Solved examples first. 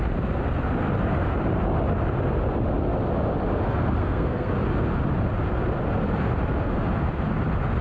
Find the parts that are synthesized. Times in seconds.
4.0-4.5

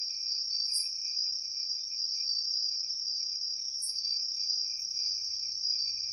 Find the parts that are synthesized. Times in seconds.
none

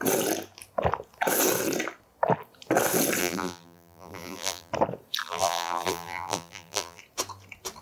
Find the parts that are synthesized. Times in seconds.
3.2-4.7; 5.2-7.0

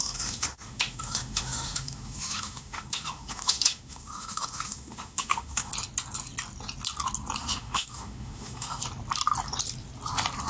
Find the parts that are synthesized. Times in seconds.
0.0-5.7; 7.4-8.8

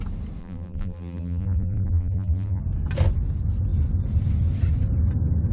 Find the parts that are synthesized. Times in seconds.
0.4-2.6

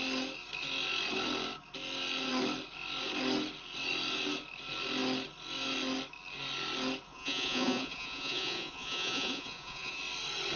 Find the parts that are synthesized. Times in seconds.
7.1-10.0

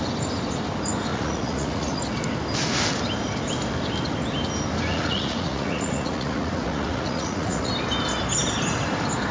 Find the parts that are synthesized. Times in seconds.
1.1-2.0; 4.9-7.7